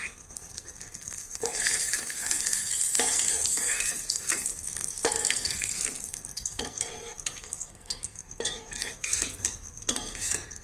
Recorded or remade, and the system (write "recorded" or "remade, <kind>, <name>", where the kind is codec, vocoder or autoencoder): remade, codec, SNAC